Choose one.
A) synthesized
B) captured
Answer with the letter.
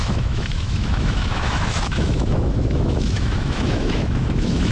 A